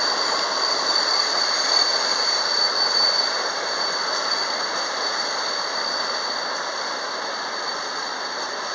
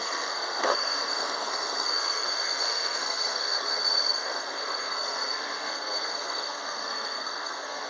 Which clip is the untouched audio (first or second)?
first